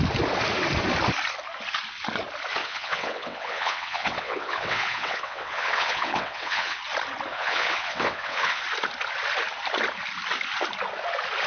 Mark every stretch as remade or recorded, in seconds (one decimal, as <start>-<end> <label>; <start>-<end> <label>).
0.0-2.6 recorded; 2.6-6.8 remade; 6.8-7.3 recorded; 7.3-8.6 remade; 8.6-11.5 recorded